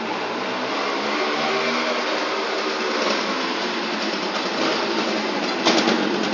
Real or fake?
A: real